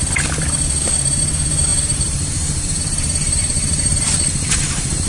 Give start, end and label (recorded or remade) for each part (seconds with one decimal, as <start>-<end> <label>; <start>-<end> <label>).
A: 0.0-1.7 recorded; 1.7-5.1 remade